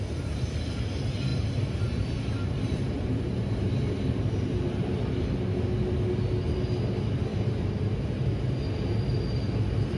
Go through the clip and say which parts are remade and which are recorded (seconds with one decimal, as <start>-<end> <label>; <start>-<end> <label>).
0.0-1.3 recorded; 1.3-4.3 remade; 4.3-7.3 recorded; 7.3-7.8 remade; 7.8-10.0 recorded